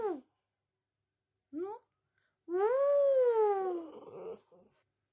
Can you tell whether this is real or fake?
real